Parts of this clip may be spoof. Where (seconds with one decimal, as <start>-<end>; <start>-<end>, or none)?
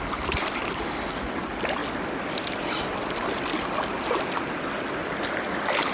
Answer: none